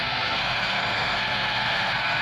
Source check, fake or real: fake